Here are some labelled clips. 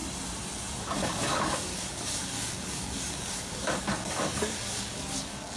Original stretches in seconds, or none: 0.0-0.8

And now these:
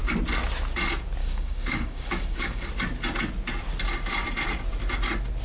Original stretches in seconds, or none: 0.0-1.2; 2.7-5.4

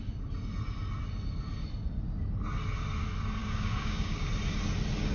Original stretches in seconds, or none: 0.0-3.4; 4.3-5.1

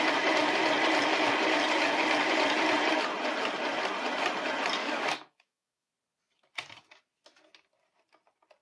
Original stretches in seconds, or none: 0.0-4.8; 5.9-8.6